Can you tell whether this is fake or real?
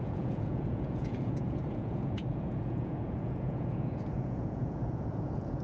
fake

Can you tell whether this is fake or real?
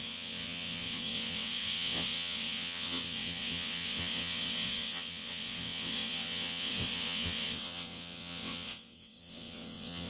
fake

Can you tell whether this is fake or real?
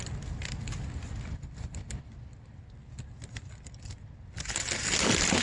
real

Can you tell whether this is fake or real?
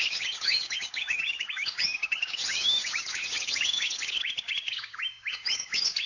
fake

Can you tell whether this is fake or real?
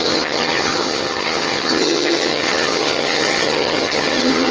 fake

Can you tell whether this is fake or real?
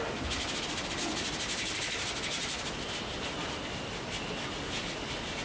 real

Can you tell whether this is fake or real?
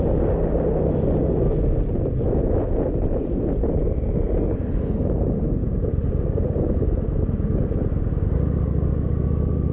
real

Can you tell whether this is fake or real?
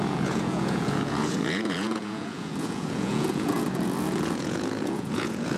fake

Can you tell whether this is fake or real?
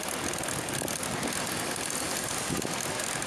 real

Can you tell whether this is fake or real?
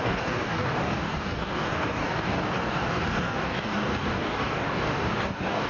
fake